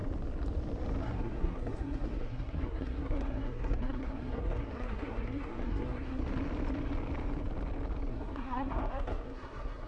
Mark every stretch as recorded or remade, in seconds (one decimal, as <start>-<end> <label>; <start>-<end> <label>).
0.0-1.0 recorded; 1.0-6.2 remade; 6.2-8.1 recorded; 8.1-9.9 remade